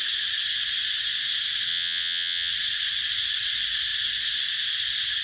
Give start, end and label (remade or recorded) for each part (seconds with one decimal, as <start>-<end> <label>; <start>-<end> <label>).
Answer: 0.0-1.7 recorded; 1.7-2.5 remade; 2.5-5.2 recorded

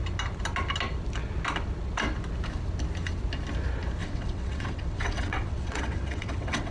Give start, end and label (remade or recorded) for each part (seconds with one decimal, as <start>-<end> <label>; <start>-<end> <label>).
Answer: 0.0-4.0 recorded; 4.0-6.7 remade

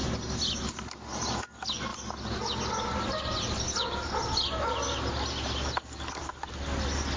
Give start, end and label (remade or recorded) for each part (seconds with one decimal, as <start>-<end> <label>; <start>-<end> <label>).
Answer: 0.0-7.2 recorded

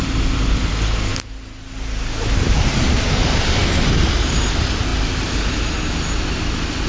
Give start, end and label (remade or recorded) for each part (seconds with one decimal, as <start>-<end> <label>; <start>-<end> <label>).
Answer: 0.0-6.9 recorded

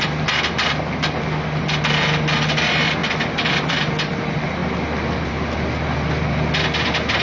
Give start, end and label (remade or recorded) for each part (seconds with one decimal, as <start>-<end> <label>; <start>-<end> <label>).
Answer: 0.0-7.2 recorded

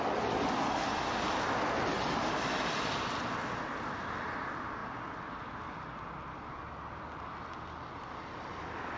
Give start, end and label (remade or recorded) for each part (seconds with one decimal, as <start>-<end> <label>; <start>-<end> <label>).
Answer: 0.0-9.0 recorded